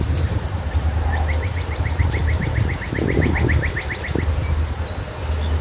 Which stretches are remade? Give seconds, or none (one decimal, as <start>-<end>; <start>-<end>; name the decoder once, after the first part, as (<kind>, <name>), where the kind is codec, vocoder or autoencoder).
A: 0.0-2.2 (vocoder, BigVGAN v2)